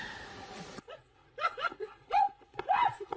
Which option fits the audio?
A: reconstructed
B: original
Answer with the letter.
A